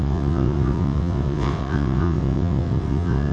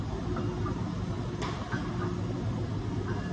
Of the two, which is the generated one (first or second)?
first